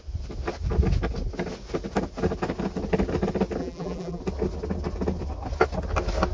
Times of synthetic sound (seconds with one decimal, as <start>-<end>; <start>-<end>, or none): 3.6-4.2